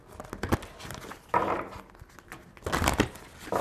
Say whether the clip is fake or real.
real